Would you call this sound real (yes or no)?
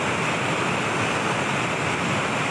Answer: yes